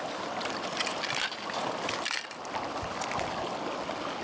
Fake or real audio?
real